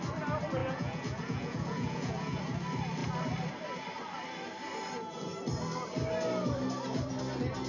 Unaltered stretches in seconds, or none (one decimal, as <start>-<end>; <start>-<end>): 0.0-0.6; 2.4-7.7